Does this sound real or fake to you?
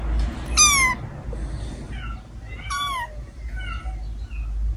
real